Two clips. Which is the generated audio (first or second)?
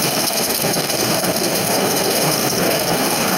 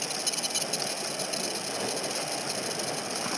first